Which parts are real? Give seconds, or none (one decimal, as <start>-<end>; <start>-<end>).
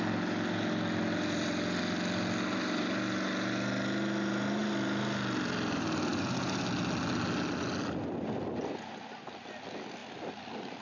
0.0-10.8